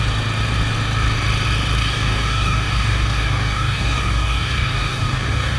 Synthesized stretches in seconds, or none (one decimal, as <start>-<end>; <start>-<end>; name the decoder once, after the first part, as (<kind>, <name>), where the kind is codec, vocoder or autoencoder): 1.8-5.6 (codec, DAC)